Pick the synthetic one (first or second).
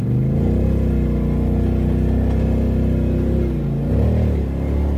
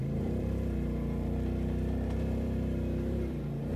second